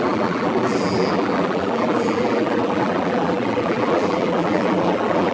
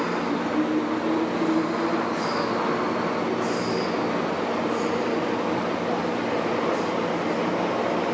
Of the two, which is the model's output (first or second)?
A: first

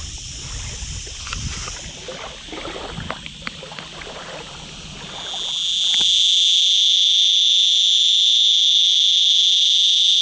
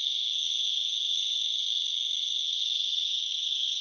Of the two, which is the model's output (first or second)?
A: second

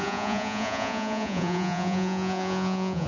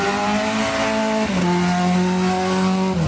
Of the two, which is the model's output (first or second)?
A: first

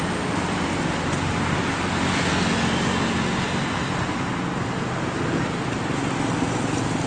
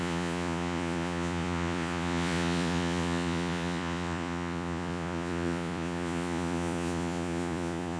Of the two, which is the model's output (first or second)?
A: second